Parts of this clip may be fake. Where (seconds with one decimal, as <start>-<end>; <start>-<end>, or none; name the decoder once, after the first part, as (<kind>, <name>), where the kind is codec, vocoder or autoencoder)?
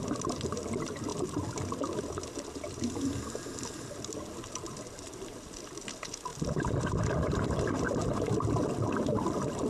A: 0.0-1.1 (vocoder, BigVGAN v2); 2.0-8.0; 9.0-9.7